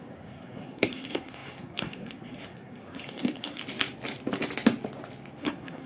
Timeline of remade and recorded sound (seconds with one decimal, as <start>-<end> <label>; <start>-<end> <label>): 0.0-3.6 remade; 3.6-5.4 recorded; 5.4-5.9 remade